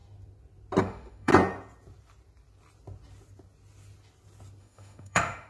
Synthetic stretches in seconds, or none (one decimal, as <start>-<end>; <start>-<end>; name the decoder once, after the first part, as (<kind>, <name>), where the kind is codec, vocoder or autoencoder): 0.8-1.3 (autoencoder, DAC-VAE); 4.6-5.5